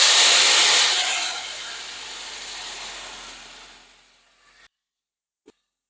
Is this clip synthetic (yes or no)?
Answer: no